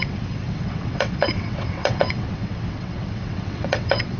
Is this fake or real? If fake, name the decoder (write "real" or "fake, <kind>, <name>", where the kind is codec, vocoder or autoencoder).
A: fake, vocoder, WaveNeXt